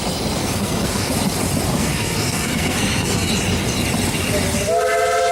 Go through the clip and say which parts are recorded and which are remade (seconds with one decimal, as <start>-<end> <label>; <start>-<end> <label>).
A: 0.0-0.4 recorded; 0.4-1.1 remade; 1.1-1.7 recorded; 1.7-3.3 remade; 3.3-5.3 recorded